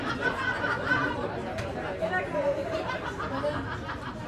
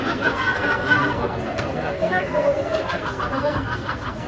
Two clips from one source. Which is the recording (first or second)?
first